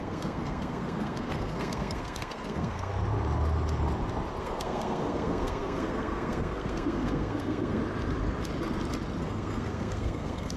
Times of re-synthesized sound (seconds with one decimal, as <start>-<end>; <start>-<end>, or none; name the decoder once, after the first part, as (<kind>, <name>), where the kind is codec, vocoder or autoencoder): 0.0-2.9 (codec, SNAC); 4.4-7.8; 9.2-10.6